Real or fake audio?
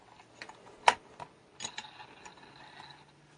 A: real